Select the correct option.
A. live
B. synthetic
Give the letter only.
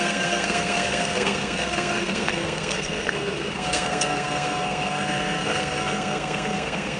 B